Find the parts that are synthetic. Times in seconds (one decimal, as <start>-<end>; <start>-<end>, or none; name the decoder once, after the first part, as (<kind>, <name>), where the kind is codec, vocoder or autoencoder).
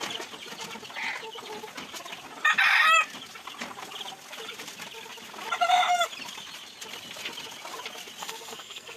8.2-9.0 (codec, SNAC)